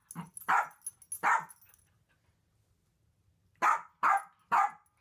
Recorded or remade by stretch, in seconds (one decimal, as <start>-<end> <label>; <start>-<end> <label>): 0.0-5.0 recorded